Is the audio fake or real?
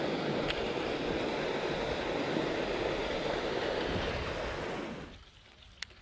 real